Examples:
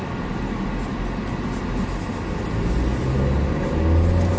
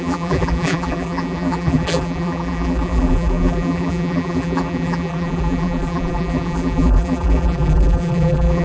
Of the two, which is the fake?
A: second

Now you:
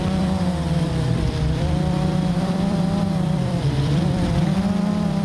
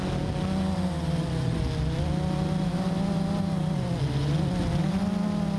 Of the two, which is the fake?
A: first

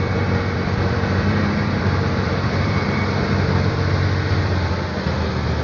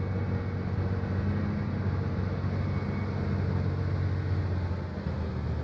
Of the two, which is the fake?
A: first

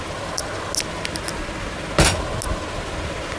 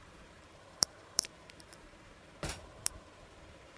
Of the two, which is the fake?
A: second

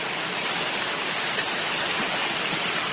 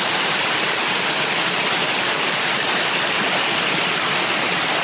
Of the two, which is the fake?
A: first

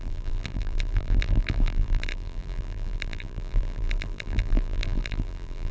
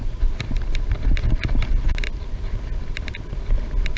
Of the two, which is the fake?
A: first